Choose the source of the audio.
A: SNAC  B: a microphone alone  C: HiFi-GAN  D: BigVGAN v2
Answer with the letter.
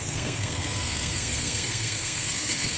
A